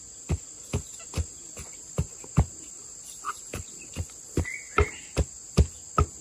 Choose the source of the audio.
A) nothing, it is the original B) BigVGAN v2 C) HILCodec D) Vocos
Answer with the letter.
A